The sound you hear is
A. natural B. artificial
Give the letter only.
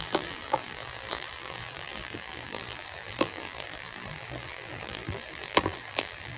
B